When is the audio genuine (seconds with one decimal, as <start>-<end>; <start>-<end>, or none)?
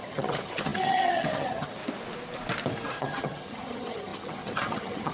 1.8-3.0